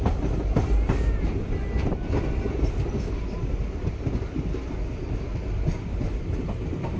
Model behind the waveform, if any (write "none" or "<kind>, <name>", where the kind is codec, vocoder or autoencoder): none